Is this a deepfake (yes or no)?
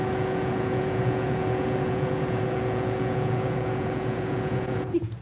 yes